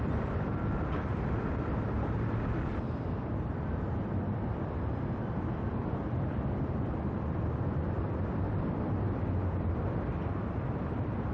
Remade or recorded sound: remade